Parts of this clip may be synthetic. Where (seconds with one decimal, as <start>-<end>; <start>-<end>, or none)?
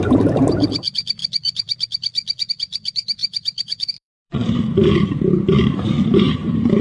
0.0-1.2; 2.5-6.8